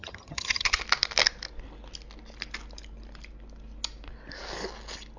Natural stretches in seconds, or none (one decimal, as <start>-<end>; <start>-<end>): 0.8-5.2